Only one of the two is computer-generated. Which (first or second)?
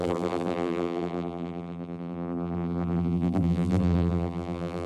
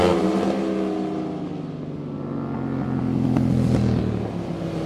first